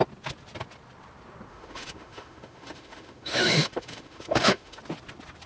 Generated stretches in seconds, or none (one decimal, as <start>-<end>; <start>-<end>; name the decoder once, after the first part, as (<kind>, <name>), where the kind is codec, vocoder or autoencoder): 1.5-4.8 (autoencoder, DAC-VAE)